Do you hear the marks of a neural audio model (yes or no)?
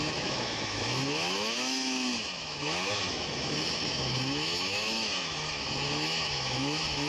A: yes